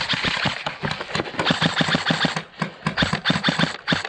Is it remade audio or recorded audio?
recorded